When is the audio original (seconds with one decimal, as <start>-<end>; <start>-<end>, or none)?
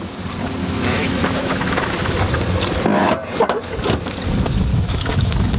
0.0-0.6; 1.9-4.7